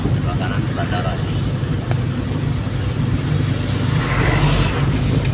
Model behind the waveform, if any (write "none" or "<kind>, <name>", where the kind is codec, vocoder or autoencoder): none